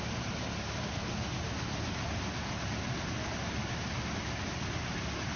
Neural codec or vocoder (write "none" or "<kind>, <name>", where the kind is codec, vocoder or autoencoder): none